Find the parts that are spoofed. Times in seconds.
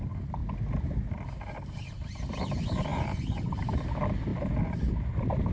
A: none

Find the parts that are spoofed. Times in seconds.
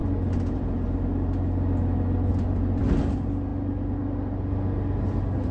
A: none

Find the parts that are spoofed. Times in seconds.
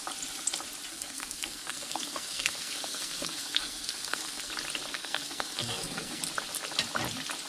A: 0.9-4.5 (codec, SNAC); 4.9-6.2